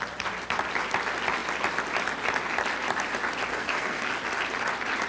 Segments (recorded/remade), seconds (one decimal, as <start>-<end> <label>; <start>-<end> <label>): 0.0-3.5 recorded; 3.5-4.1 remade; 4.1-5.1 recorded